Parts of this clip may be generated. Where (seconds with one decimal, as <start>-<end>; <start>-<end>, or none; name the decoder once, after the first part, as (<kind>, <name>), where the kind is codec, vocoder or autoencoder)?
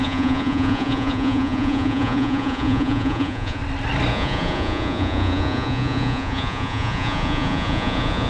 0.0-3.6 (vocoder, Vocos); 4.1-8.3